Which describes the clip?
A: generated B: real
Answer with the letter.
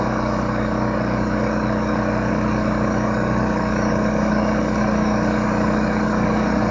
A